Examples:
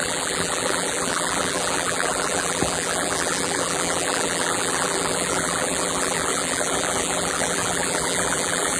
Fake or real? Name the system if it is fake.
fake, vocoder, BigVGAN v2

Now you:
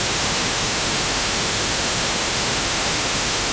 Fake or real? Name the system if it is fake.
fake, autoencoder, DAC-VAE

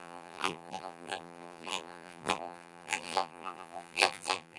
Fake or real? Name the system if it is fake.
fake, vocoder, BigVGAN v2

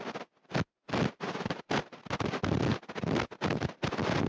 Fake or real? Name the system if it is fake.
real